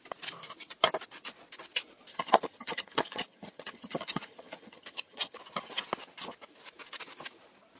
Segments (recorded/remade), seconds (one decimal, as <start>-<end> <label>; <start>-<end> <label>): 0.0-2.1 recorded; 2.1-5.4 remade; 5.4-7.8 recorded

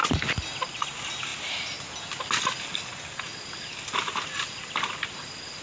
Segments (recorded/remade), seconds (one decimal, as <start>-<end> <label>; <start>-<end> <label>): 0.0-5.6 recorded

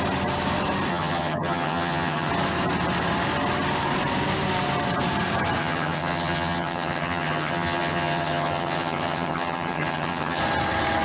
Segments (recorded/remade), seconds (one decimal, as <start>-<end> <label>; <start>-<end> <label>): 0.0-0.9 recorded; 0.9-2.3 remade; 2.3-5.6 recorded; 5.6-10.4 remade; 10.4-11.0 recorded

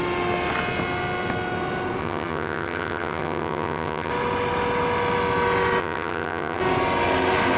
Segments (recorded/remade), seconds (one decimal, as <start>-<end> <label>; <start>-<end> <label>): 0.0-2.0 recorded; 2.0-4.1 remade; 4.1-5.8 recorded; 5.8-6.6 remade; 6.6-7.6 recorded